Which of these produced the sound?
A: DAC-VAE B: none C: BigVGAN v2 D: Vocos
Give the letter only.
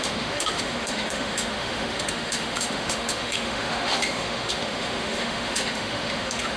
A